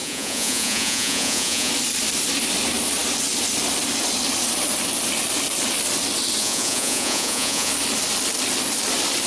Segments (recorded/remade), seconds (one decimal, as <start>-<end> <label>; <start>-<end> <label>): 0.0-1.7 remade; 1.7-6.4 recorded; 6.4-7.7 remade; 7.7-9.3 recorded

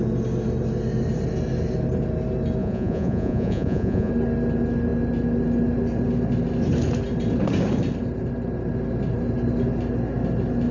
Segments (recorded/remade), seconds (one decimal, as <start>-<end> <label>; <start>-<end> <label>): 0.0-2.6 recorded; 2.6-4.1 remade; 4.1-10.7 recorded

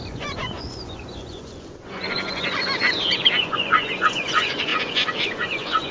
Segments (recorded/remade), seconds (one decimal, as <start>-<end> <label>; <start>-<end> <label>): 0.0-5.9 remade